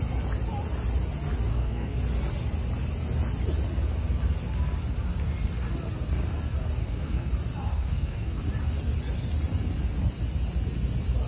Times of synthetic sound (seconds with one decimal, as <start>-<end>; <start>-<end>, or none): 1.5-2.0; 6.8-7.3; 7.7-8.4